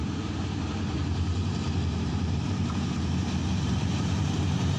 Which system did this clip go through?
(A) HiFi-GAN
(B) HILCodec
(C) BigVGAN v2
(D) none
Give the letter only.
C